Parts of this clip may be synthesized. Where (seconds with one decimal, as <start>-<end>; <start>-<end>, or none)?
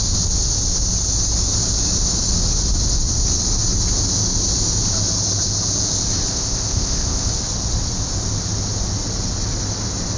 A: 6.3-7.3